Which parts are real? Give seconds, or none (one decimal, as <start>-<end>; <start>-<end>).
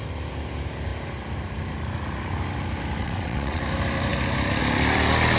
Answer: 0.0-3.0; 3.6-5.4